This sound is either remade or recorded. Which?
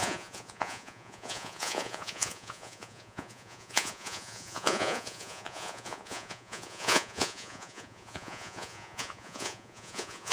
remade